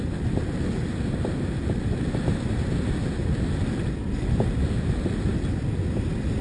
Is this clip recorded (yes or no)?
yes